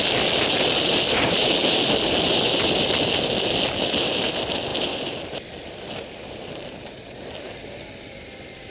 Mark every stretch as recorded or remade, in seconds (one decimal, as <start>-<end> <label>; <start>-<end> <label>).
0.0-8.7 recorded